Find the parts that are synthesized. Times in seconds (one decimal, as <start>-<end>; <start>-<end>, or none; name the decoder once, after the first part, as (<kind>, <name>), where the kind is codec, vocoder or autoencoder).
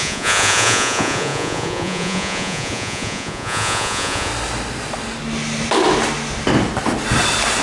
0.0-4.3 (vocoder, Vocos)